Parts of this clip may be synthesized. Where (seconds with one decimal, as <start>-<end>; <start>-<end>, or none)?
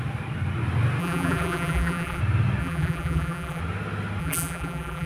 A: 1.0-2.2; 2.6-3.6; 4.2-5.1